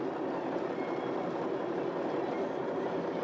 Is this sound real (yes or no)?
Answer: yes